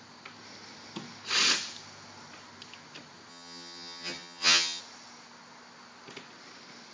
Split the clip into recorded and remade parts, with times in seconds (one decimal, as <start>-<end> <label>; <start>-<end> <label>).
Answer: 0.0-3.3 recorded; 3.3-4.8 remade; 4.8-6.9 recorded

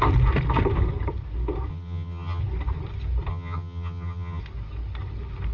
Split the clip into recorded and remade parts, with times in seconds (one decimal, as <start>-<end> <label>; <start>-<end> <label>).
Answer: 0.0-1.7 recorded; 1.7-2.4 remade; 2.4-3.3 recorded; 3.3-4.4 remade; 4.4-5.5 recorded

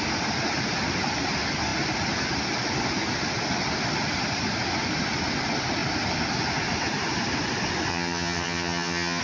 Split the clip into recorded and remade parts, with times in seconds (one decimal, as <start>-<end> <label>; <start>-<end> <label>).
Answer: 0.0-7.9 recorded; 7.9-9.2 remade

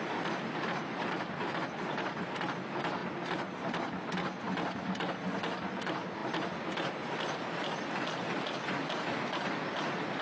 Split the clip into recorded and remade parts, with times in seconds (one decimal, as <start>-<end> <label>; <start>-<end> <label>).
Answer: 0.0-10.2 recorded

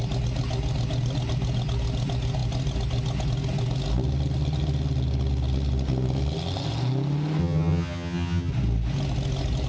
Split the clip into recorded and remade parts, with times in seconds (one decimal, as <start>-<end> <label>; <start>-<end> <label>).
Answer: 0.0-7.4 recorded; 7.4-8.5 remade; 8.5-9.7 recorded

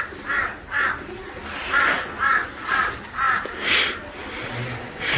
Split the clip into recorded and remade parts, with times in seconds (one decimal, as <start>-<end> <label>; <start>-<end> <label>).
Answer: 0.0-5.2 recorded

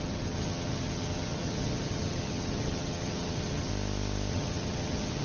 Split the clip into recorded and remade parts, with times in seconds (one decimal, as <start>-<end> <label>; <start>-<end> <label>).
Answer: 0.0-3.7 remade; 3.7-4.3 recorded; 4.3-5.2 remade

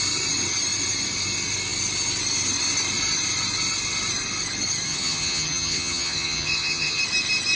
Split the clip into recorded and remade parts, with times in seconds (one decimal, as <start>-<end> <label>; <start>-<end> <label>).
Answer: 0.0-4.9 recorded; 4.9-7.0 remade; 7.0-7.5 recorded